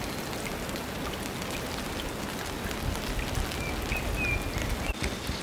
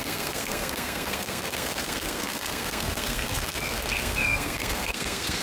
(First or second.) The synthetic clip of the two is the second